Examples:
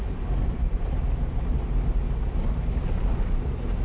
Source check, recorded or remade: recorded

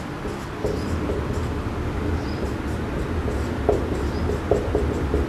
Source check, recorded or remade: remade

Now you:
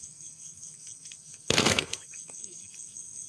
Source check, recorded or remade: remade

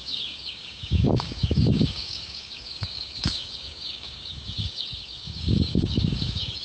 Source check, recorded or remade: remade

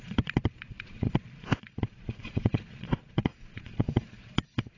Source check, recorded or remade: remade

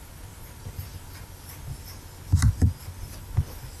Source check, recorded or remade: recorded